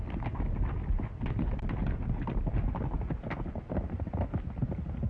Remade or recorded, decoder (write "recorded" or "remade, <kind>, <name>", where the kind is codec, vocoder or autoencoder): recorded